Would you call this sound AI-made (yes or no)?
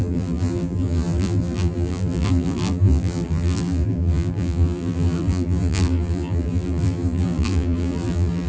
yes